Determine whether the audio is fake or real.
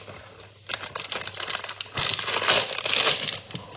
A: real